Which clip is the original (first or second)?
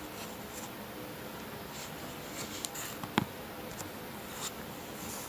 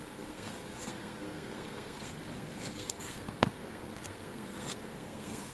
first